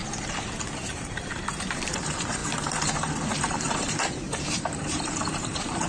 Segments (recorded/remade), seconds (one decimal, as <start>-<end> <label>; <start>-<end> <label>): 0.0-0.9 recorded; 0.9-5.9 remade